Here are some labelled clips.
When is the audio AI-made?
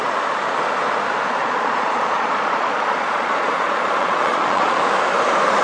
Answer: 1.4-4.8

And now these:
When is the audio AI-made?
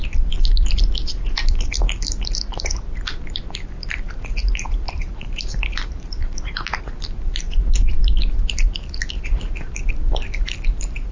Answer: 4.4-6.8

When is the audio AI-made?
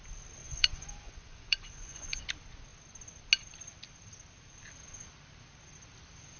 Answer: 0.4-2.2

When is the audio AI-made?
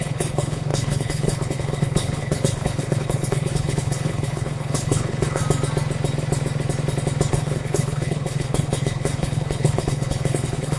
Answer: 0.0-5.4; 7.3-10.8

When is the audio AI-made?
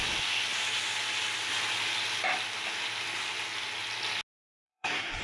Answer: 4.4-5.2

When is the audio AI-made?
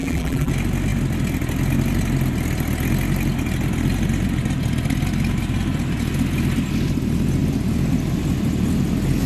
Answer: 0.0-0.5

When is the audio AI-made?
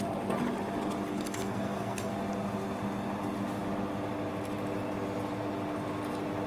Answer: 1.1-2.1